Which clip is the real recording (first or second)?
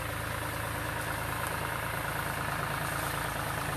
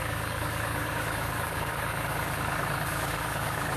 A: first